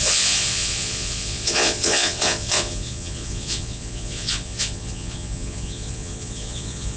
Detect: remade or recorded remade